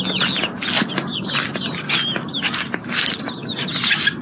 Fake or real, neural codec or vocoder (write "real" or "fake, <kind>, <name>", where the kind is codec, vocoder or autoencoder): real